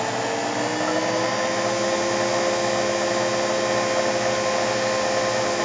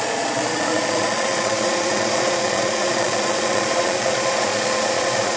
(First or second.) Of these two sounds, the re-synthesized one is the second